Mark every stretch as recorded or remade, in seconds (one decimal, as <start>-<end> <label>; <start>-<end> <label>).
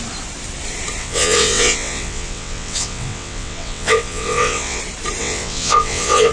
0.0-1.0 recorded; 1.0-4.8 remade; 4.8-5.2 recorded; 5.2-6.3 remade